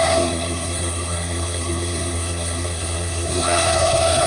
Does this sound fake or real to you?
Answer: fake